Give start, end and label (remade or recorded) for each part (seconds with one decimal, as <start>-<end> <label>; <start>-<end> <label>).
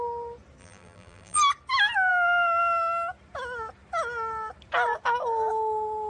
0.0-0.6 recorded; 0.6-1.4 remade; 1.4-6.1 recorded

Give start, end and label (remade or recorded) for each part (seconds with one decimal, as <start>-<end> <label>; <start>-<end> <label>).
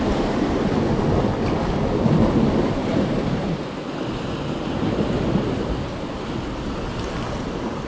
0.0-2.8 recorded; 2.8-3.8 remade; 3.8-7.9 recorded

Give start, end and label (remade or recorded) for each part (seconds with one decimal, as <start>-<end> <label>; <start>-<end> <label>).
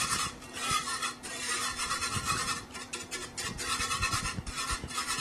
0.0-0.6 remade; 0.6-1.3 recorded; 1.3-3.2 remade; 3.2-3.8 recorded; 3.8-5.2 remade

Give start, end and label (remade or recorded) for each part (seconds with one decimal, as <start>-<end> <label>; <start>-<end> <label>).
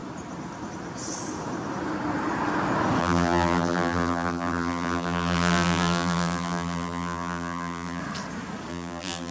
0.0-3.0 recorded; 3.0-8.0 remade; 8.0-8.7 recorded; 8.7-9.3 remade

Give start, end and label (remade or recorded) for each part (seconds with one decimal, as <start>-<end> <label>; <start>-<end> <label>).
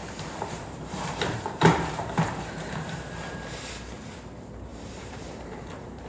0.0-3.7 remade; 3.7-4.7 recorded; 4.7-6.1 remade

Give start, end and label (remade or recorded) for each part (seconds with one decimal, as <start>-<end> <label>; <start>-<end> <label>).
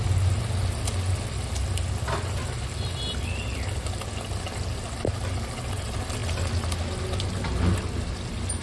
0.0-8.6 recorded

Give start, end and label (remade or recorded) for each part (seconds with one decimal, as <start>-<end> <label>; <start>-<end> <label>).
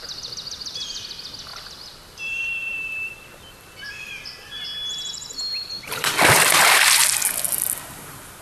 0.0-1.5 recorded; 1.5-6.1 remade; 6.1-8.4 recorded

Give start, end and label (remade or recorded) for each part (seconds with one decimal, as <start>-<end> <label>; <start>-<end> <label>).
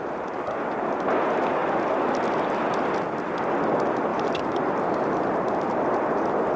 0.0-4.1 recorded; 4.1-4.9 remade; 4.9-6.6 recorded